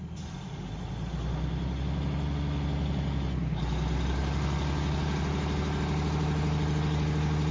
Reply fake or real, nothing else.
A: real